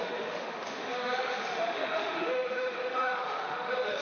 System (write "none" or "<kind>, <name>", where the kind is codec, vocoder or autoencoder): autoencoder, DAC-VAE